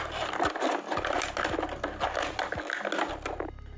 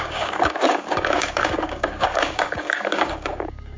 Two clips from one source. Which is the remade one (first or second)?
second